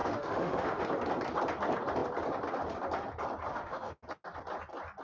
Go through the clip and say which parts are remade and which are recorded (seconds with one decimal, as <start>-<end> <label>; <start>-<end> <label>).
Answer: 0.0-0.8 remade; 0.8-3.5 recorded; 3.5-4.0 remade; 4.0-5.0 recorded